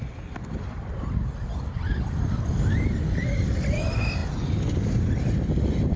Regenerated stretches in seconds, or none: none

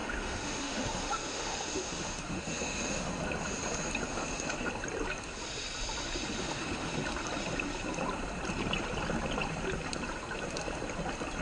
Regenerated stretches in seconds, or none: 0.0-3.1 (autoencoder, DAC-VAE); 4.1-4.7; 6.4-6.9

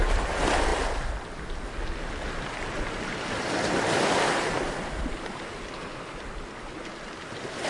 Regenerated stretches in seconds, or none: none

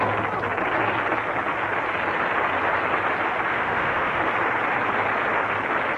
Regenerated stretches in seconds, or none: 3.5-4.2 (autoencoder, DAC-VAE)

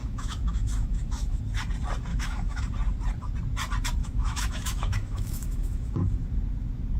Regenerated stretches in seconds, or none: 0.0-1.4 (autoencoder, DAC-VAE); 2.1-2.7; 4.0-5.9

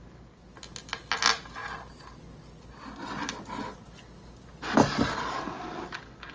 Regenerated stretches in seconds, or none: none

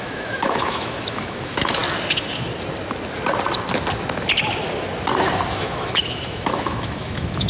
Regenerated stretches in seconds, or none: 0.0-1.8 (autoencoder, DAC-VAE); 5.5-7.5

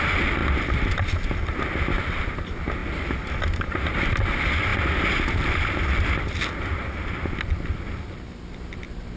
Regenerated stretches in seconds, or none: none